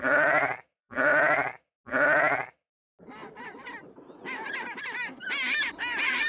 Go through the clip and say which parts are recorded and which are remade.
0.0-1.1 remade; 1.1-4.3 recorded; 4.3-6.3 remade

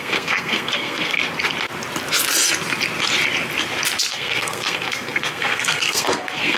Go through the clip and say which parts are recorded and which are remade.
0.0-1.2 remade; 1.2-4.1 recorded; 4.1-6.6 remade

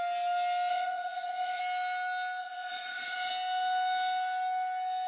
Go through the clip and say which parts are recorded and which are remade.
0.0-0.7 recorded; 0.7-1.6 remade; 1.6-2.4 recorded; 2.4-3.3 remade; 3.3-5.1 recorded

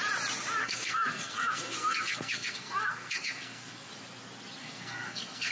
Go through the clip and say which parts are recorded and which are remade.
0.0-0.6 recorded; 0.6-3.9 remade; 3.9-4.6 recorded; 4.6-5.5 remade

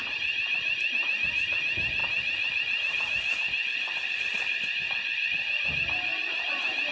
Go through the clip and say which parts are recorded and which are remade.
0.0-6.9 recorded

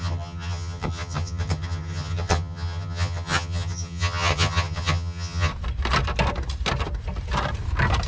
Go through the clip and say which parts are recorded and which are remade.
0.0-5.5 remade; 5.5-8.1 recorded

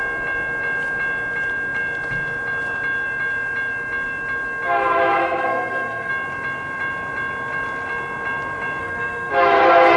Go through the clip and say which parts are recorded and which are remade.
0.0-5.2 recorded; 5.2-6.1 remade; 6.1-8.8 recorded; 8.8-9.3 remade; 9.3-10.0 recorded